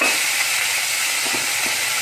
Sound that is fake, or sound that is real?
real